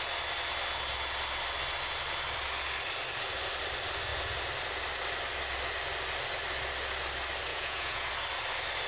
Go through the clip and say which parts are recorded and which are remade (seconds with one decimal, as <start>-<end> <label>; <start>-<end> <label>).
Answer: 0.0-7.5 recorded; 7.5-8.1 remade; 8.1-8.9 recorded